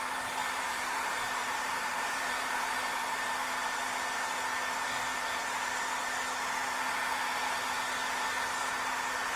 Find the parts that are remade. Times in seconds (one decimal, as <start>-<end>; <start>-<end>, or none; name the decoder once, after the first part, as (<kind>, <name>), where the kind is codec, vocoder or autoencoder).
0.4-3.3 (vocoder, BigVGAN v2)